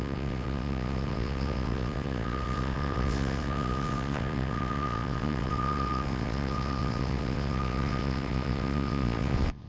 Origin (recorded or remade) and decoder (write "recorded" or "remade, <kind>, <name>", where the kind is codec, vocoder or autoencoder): remade, vocoder, WaveNeXt